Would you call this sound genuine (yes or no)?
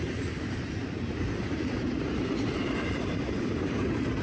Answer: no